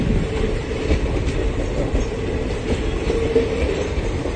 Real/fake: real